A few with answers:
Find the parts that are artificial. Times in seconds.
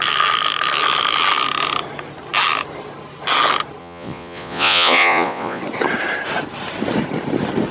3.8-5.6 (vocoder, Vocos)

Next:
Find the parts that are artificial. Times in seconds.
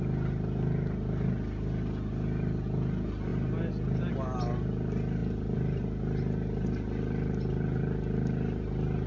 5.2-5.8 (vocoder, BigVGAN v2)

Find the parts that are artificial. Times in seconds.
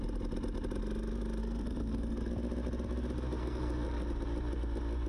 1.4-2.3 (codec, SNAC); 3.4-4.1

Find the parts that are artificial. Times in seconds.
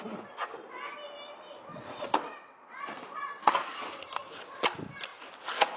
1.7-4.0 (vocoder, Vocos)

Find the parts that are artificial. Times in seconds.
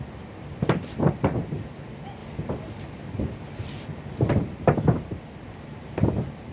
none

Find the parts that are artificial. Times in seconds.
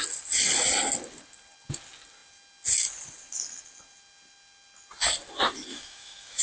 5.7-6.4 (autoencoder, DAC-VAE)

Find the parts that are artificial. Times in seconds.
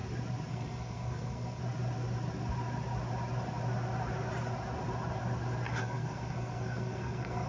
0.5-1.6 (codec, SNAC); 5.8-7.5